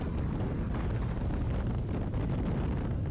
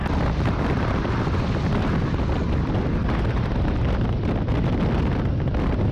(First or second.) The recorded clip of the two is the first